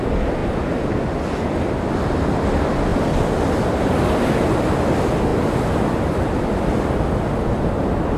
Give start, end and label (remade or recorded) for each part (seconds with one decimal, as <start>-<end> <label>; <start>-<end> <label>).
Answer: 0.0-8.2 recorded

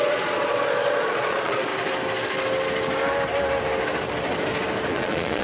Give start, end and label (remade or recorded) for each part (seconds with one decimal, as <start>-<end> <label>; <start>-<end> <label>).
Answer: 0.0-1.7 remade; 1.7-4.9 recorded; 4.9-5.4 remade

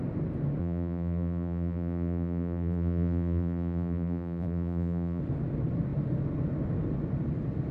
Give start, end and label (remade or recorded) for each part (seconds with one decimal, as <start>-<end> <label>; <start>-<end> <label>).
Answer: 0.0-0.6 recorded; 0.6-5.2 remade; 5.2-7.7 recorded